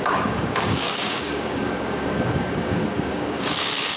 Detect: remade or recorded remade